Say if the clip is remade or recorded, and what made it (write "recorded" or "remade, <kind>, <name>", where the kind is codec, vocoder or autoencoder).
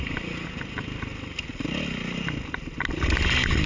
recorded